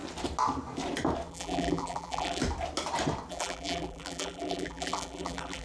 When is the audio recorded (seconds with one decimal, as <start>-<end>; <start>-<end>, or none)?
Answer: 0.0-1.3; 2.4-3.3